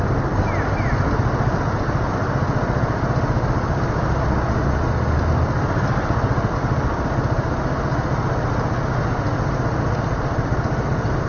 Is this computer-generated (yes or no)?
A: no